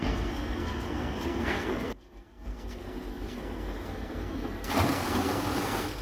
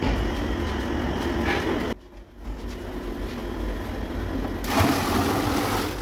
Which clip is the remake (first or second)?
first